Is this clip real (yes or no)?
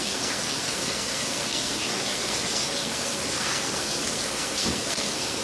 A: no